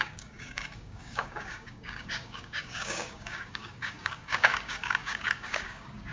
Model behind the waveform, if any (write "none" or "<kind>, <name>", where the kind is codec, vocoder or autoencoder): codec, DAC